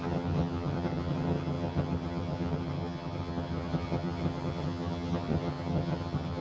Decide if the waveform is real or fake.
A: fake